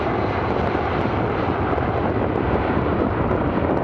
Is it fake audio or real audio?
fake